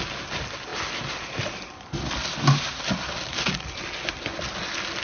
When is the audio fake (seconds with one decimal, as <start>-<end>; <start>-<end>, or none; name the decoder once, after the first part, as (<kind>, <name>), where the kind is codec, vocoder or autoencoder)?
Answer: none